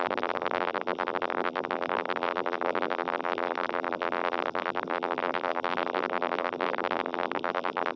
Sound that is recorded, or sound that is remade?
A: remade